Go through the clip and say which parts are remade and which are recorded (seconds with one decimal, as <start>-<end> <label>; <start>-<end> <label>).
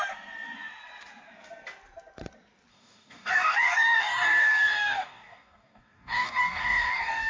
0.0-2.7 recorded; 2.7-7.3 remade